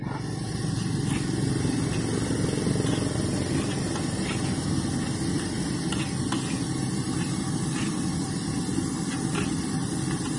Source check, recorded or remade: recorded